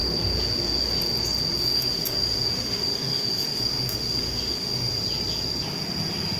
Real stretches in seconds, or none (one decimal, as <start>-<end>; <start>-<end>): 0.0-1.6; 4.9-6.4

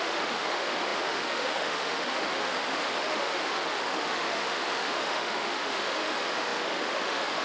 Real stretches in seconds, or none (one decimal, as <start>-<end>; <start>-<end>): none